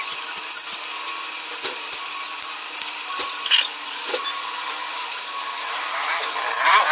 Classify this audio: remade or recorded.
recorded